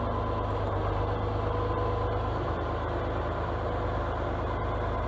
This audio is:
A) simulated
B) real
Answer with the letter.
B